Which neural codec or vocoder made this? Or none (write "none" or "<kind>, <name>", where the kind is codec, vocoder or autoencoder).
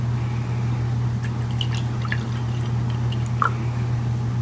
none